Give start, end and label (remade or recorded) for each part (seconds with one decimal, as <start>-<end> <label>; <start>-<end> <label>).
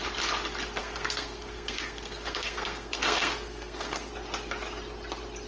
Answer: 0.0-0.8 recorded; 0.8-4.1 remade; 4.1-5.5 recorded